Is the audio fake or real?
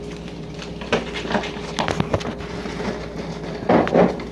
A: real